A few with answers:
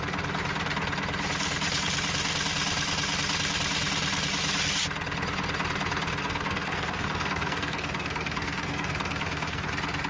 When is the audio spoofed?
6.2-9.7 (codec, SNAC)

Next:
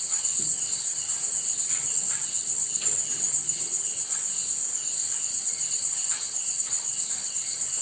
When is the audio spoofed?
0.0-4.2 (vocoder, HiFi-GAN); 5.3-7.8

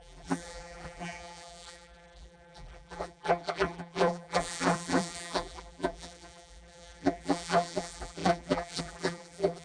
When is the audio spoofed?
0.0-9.6 (vocoder, BigVGAN v2)

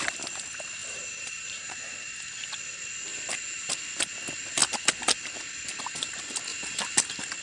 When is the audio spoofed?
0.8-1.9 (vocoder, BigVGAN v2); 3.1-3.8; 6.5-7.0

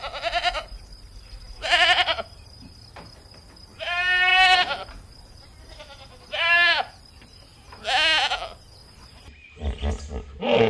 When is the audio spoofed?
0.4-2.7 (vocoder, BigVGAN v2); 4.3-4.9; 8.8-9.9

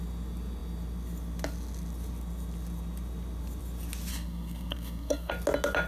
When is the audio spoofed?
4.1-5.3 (codec, SNAC)

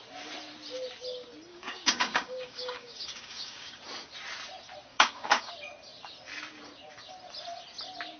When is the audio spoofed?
1.5-3.8 (codec, DAC); 4.9-5.5

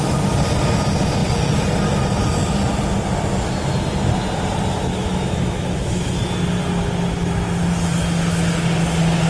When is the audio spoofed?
4.9-6.1 (autoencoder, DAC-VAE)